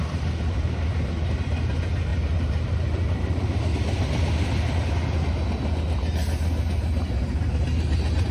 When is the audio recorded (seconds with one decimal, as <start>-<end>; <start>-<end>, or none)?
0.0-2.1; 3.6-8.3